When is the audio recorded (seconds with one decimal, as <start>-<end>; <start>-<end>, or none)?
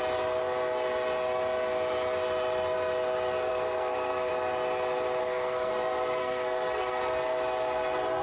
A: 0.0-3.5; 4.3-5.2; 5.7-6.2; 7.0-8.2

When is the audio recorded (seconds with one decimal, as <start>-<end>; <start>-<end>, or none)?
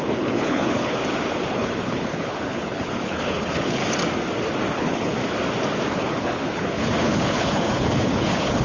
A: 1.0-1.5; 3.8-4.7; 5.2-5.9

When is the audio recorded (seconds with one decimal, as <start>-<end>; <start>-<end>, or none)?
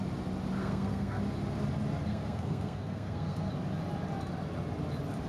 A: 0.0-0.6; 1.2-2.1; 3.5-5.3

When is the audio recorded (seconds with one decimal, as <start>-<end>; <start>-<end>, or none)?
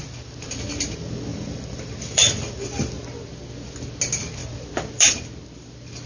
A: 0.0-1.3; 3.2-4.4; 5.1-6.1